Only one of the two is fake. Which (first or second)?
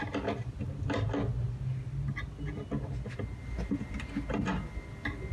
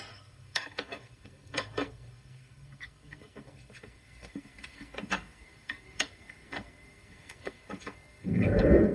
second